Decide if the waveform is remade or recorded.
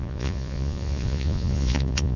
remade